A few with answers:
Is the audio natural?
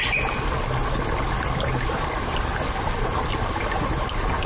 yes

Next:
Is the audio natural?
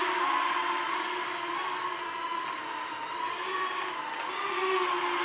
yes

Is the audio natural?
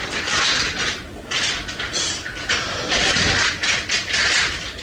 yes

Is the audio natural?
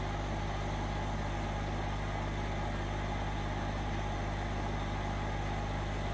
yes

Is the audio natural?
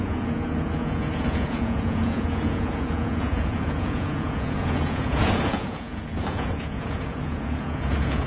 no